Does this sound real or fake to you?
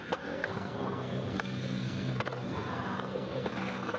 fake